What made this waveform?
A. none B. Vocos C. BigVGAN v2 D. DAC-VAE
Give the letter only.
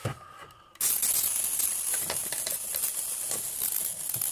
A